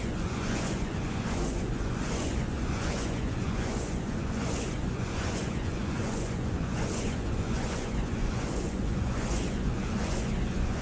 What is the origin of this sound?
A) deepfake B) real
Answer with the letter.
A